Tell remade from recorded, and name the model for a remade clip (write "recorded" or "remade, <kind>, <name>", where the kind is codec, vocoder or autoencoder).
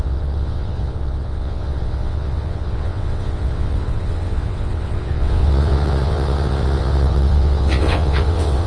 remade, vocoder, WaveNeXt